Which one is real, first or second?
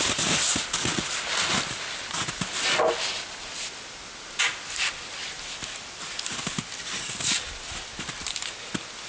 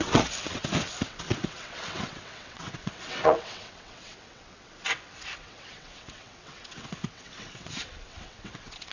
first